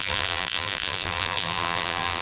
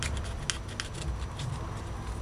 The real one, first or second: second